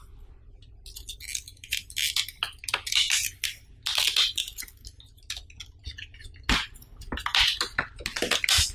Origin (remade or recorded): recorded